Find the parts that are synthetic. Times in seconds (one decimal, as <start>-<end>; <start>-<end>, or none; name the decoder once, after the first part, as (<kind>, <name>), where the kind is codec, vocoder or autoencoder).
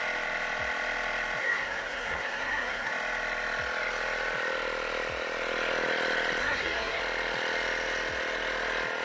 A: 1.4-2.9 (codec, SNAC); 6.4-7.0